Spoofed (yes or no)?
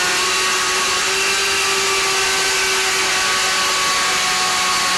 no